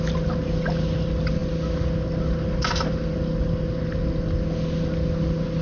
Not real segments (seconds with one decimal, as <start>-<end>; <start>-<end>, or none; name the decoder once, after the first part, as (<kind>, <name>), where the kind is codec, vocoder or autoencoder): none